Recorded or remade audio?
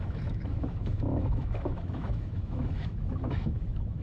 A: remade